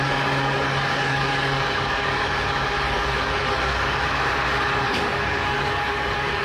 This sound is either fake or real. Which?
fake